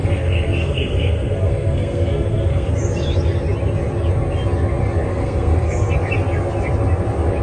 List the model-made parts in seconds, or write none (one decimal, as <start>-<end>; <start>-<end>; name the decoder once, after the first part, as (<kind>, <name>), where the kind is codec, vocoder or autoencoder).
0.0-2.7 (codec, SNAC); 5.1-5.9